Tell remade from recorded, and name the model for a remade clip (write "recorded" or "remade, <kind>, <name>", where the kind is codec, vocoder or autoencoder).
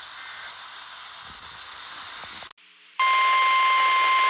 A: recorded